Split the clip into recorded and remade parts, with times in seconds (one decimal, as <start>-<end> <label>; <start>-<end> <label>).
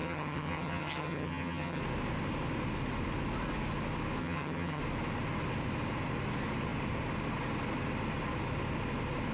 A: 0.0-1.8 remade; 1.8-4.2 recorded; 4.2-4.8 remade; 4.8-9.3 recorded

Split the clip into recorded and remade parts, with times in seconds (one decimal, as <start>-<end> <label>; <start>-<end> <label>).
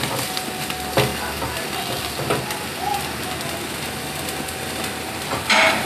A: 0.0-5.9 recorded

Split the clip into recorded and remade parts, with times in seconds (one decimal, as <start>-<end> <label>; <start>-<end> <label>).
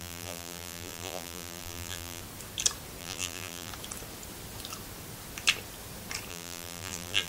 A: 0.0-2.2 remade; 2.2-3.0 recorded; 3.0-3.7 remade; 3.7-6.3 recorded; 6.3-7.3 remade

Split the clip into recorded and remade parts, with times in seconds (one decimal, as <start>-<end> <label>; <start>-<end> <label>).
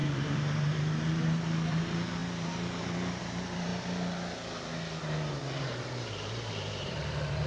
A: 0.0-3.7 remade; 3.7-5.6 recorded; 5.6-7.5 remade